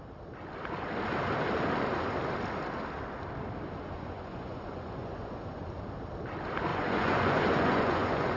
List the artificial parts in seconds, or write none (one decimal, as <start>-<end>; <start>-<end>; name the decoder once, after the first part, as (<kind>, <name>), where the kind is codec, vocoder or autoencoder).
3.8-5.6 (vocoder, Vocos); 6.7-8.4